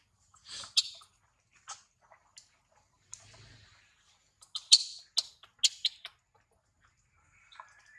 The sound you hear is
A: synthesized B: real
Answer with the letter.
B